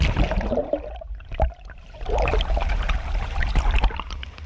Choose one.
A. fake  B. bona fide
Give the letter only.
A